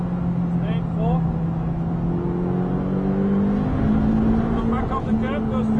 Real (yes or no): yes